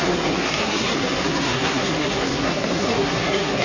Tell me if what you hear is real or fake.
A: fake